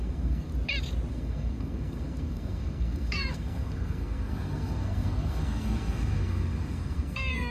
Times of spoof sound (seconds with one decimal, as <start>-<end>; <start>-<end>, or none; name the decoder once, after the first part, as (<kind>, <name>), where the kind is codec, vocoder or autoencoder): 0.0-0.5 (codec, SNAC); 1.1-7.5